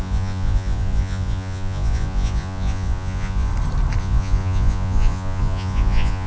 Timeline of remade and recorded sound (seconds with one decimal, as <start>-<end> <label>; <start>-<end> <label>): 0.0-3.5 remade; 3.5-4.0 recorded; 4.0-6.3 remade